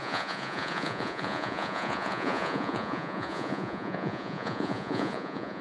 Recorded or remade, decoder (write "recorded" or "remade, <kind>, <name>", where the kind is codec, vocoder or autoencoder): remade, vocoder, Vocos